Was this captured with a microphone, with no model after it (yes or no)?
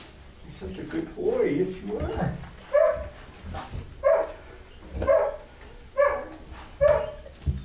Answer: yes